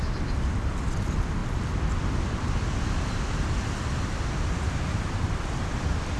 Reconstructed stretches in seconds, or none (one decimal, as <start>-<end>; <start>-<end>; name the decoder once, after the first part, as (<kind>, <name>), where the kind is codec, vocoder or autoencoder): none